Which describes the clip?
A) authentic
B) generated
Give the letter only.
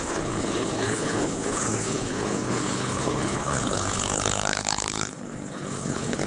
B